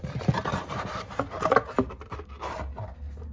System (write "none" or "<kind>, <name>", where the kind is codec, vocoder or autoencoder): none